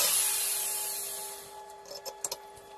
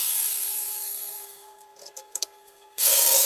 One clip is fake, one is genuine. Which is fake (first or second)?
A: second